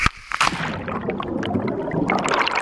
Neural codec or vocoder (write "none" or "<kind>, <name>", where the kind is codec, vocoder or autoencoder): none